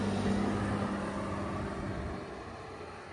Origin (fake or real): real